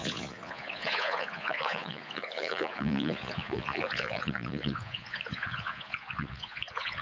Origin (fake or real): fake